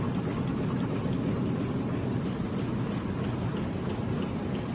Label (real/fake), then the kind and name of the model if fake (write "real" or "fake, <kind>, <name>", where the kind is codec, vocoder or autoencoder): real